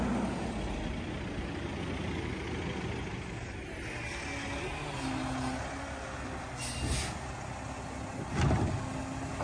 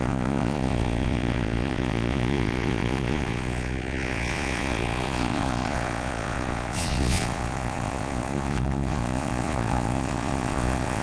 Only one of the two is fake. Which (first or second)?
second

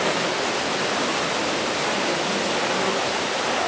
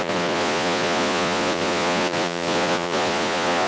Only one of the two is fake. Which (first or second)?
second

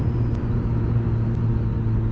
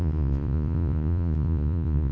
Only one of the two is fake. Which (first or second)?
second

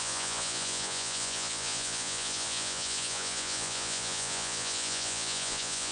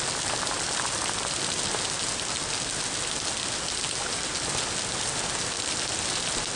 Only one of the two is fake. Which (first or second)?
first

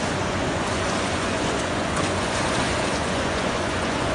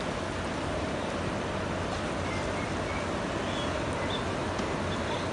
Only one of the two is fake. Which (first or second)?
first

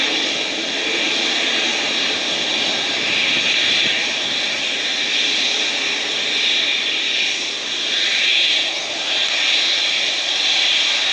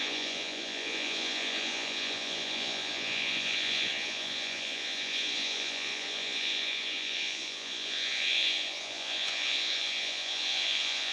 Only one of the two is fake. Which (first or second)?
second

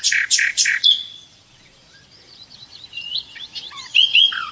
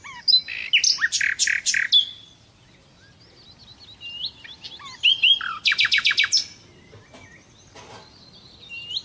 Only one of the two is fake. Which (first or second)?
first